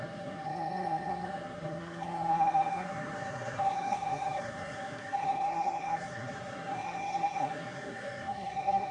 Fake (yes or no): yes